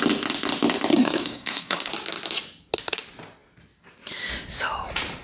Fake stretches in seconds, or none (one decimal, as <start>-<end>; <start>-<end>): 0.9-1.9

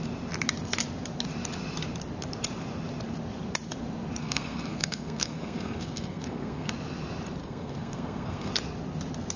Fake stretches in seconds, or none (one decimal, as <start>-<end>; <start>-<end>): 4.2-6.7; 7.4-8.5

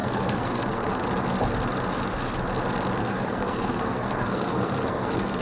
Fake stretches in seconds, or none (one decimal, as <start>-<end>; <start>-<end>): 0.0-0.9; 3.0-5.4

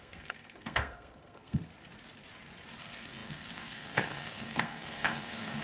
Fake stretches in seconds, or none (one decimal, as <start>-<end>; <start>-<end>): 0.0-1.6; 2.8-5.6